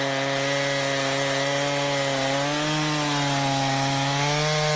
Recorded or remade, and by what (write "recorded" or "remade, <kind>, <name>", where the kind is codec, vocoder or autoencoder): recorded